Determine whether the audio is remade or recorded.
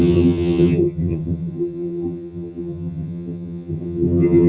remade